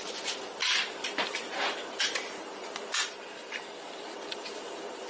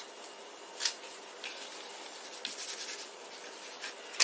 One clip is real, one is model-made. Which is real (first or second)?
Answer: second